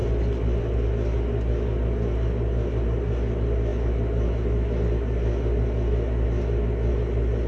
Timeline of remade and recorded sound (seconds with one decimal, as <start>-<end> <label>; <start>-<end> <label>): 0.0-7.5 recorded